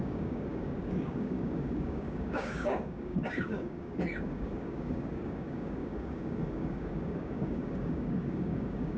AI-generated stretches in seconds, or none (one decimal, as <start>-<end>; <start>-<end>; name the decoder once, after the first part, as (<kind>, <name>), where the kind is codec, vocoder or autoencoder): 0.0-9.0 (codec, DAC)